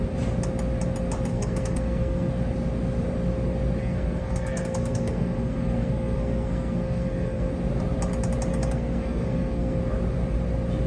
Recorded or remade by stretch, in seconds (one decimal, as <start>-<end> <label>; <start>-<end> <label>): 0.0-1.3 recorded; 1.3-2.3 remade; 2.3-3.8 recorded; 3.8-7.5 remade; 7.5-8.5 recorded; 8.5-9.8 remade; 9.8-10.9 recorded